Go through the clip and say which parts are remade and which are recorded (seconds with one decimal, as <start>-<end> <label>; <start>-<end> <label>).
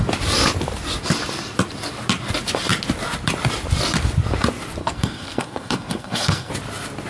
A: 0.0-4.8 recorded; 4.8-6.5 remade; 6.5-7.1 recorded